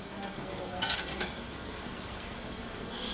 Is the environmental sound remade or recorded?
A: remade